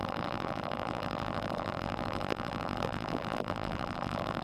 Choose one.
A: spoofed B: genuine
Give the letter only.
A